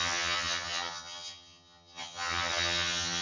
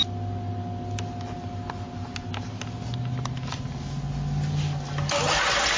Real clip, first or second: second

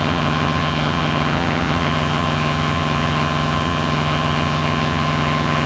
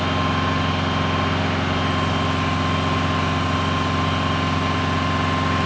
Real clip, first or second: second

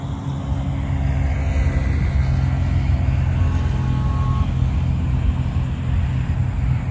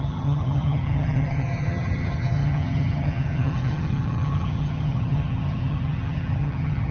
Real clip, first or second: first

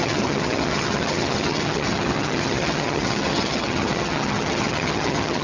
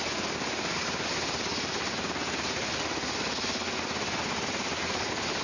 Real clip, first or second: second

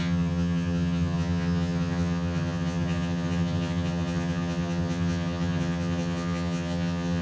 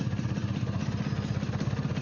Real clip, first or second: second